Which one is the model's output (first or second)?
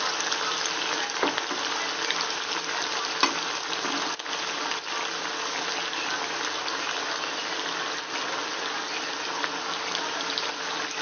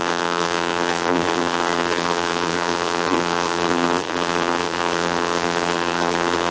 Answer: second